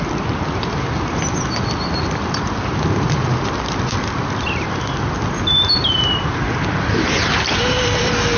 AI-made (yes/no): yes